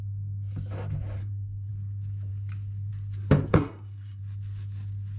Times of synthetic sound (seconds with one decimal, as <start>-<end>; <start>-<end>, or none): 1.2-1.7; 3.5-4.2

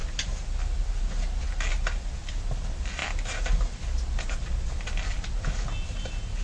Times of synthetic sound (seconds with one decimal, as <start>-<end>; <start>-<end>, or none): none

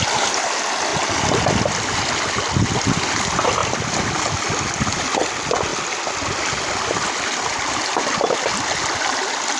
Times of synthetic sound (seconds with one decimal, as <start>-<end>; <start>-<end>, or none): none